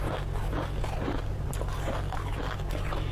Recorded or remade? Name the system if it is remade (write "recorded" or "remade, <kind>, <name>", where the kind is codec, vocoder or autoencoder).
recorded